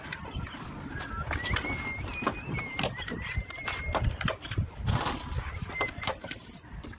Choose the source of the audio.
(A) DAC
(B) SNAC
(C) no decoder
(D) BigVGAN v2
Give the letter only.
C